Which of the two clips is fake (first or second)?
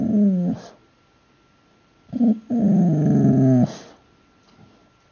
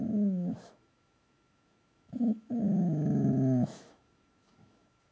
second